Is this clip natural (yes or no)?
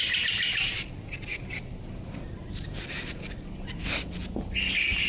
yes